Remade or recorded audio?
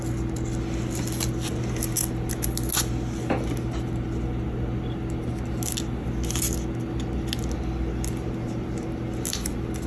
recorded